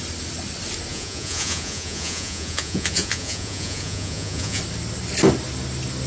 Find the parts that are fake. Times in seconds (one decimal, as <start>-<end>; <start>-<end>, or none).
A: 0.9-4.6